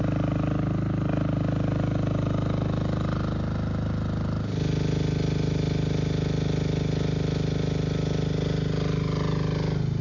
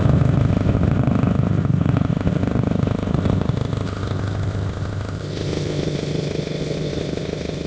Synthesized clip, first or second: second